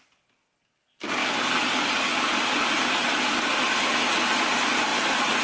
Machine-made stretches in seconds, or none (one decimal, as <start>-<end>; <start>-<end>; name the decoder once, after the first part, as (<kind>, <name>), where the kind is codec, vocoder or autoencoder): 4.9-5.4 (vocoder, BigVGAN v2)